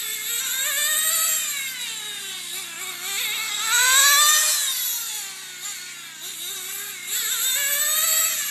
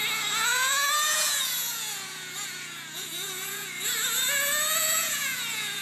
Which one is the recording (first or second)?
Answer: first